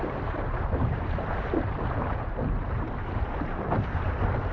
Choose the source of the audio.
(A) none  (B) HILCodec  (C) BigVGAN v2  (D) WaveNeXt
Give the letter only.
C